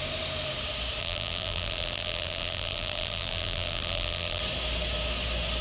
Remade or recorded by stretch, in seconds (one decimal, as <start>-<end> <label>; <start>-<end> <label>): 0.0-1.0 recorded; 1.0-4.4 remade; 4.4-5.6 recorded